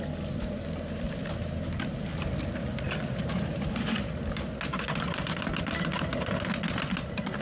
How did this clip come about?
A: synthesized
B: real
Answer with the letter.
B